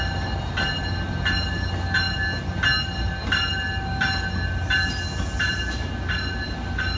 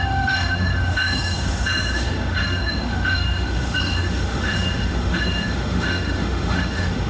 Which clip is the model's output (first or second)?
second